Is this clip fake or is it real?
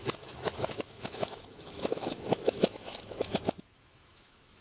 fake